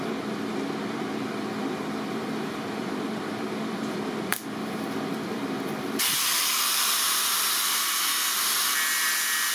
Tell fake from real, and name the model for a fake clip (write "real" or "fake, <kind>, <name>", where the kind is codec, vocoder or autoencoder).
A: fake, vocoder, BigVGAN v2